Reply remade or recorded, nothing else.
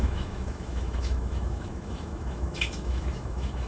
remade